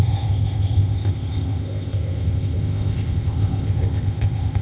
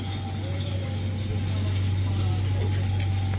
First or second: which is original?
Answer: second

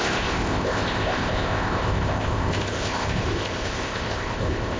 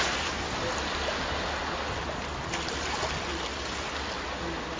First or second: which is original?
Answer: second